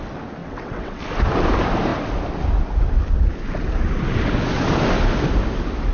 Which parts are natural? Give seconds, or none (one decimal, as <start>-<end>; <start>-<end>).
0.0-0.4; 1.0-5.9